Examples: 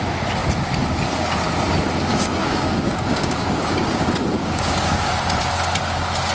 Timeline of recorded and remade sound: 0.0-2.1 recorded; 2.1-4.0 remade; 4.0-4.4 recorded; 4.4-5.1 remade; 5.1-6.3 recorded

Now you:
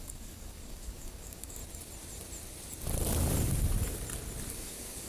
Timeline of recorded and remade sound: 0.0-1.6 remade; 1.6-4.5 recorded; 4.5-5.1 remade

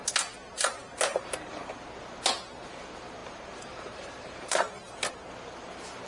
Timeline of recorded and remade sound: 0.0-0.4 recorded; 0.4-1.7 remade; 1.7-3.2 recorded; 3.2-5.0 remade; 5.0-6.1 recorded